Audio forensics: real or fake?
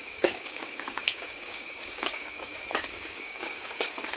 fake